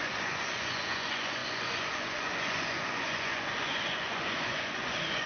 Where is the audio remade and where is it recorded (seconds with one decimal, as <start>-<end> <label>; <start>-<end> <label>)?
0.0-5.3 remade